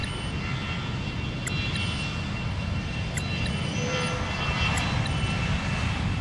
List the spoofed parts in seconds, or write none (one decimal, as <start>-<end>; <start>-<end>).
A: 2.8-6.2